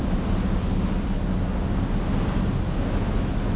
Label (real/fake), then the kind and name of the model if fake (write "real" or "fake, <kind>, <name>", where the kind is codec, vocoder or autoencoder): real